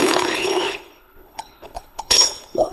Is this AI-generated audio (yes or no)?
yes